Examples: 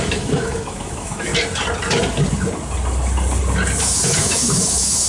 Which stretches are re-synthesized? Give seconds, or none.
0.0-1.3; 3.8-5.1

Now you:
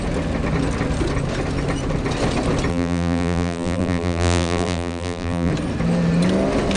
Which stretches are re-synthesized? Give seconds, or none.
2.7-5.5

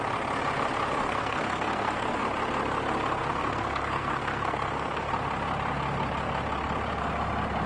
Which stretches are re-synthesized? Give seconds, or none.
1.0-2.2; 3.2-5.1

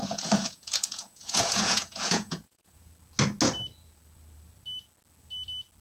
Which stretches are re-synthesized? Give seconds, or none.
0.0-2.9

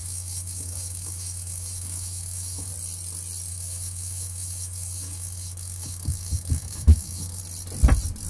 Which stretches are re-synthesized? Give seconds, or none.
0.0-2.7; 3.5-7.4

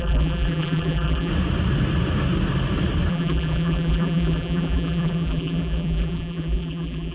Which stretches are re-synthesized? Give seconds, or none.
0.0-1.3; 3.1-7.1

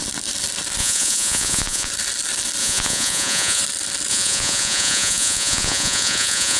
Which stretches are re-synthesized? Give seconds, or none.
0.8-1.9; 2.6-3.6; 4.1-6.6